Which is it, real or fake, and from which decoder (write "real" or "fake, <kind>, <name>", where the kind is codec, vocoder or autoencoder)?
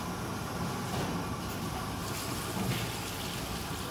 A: real